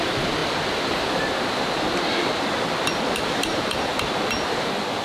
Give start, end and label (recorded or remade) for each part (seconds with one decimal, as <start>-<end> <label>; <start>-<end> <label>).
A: 0.0-0.4 remade; 0.4-1.1 recorded; 1.1-2.3 remade; 2.3-2.9 recorded; 2.9-5.0 remade